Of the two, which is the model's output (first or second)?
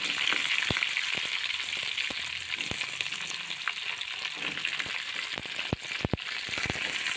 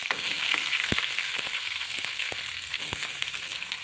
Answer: second